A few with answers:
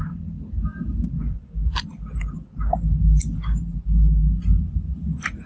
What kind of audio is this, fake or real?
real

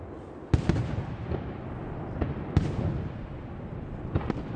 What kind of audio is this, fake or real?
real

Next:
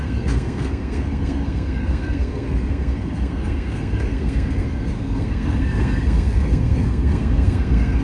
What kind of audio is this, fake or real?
fake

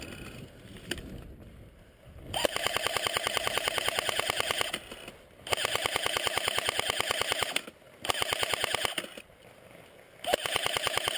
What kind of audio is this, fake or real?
real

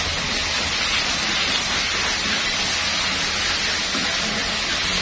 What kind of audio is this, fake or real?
real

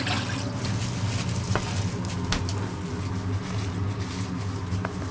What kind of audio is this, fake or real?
real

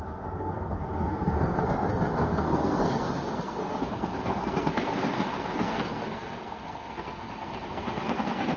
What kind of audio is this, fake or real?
fake